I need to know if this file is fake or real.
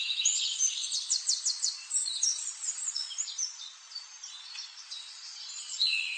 fake